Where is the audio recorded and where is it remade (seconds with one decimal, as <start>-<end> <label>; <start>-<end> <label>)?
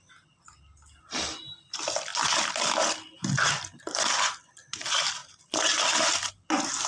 0.0-6.9 recorded